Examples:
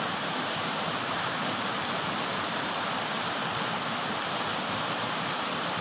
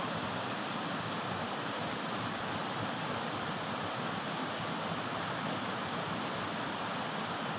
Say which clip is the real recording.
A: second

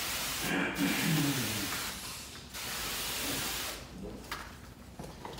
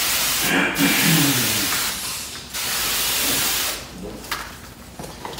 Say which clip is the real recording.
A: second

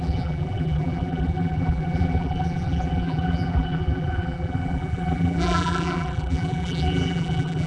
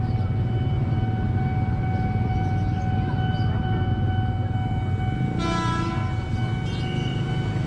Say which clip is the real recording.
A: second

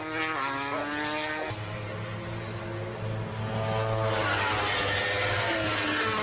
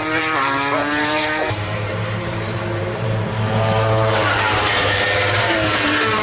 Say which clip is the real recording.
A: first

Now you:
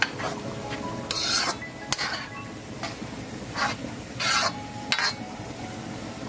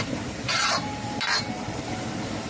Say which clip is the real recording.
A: first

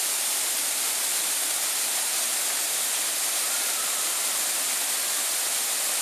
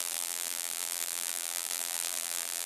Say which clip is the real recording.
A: first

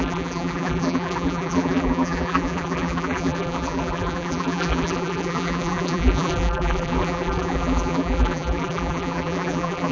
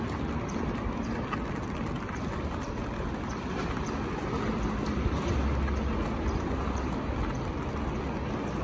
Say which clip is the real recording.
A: second